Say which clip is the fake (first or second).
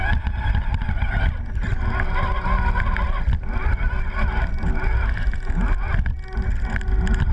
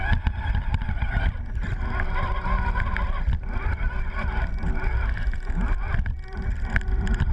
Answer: second